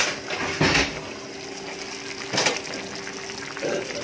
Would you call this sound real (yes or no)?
yes